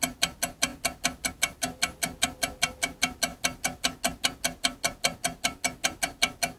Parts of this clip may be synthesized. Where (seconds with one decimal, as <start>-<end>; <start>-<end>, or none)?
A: none